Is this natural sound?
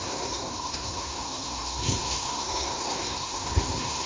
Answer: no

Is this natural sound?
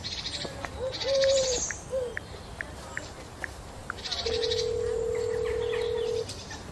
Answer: no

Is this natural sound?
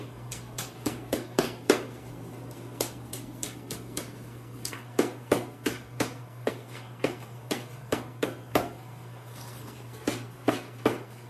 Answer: no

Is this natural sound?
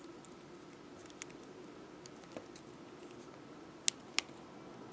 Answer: yes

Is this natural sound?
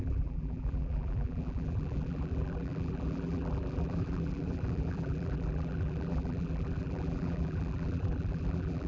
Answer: no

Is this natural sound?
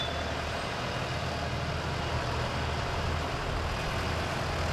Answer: yes